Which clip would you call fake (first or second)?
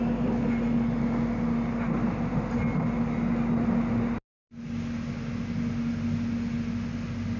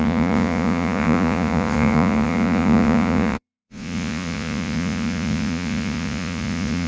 second